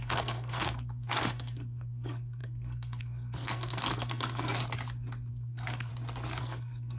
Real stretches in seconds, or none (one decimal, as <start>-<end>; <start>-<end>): 4.6-5.3; 5.9-6.4